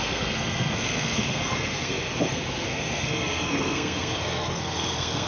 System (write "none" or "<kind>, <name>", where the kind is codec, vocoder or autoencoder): codec, SNAC